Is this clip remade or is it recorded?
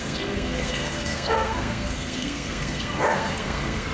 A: remade